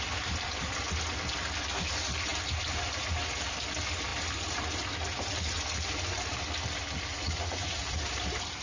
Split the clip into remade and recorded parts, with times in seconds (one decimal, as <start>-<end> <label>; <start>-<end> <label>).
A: 0.0-7.1 recorded; 7.1-8.0 remade; 8.0-8.6 recorded